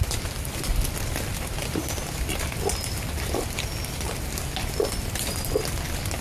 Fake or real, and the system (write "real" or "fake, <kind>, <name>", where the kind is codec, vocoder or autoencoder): real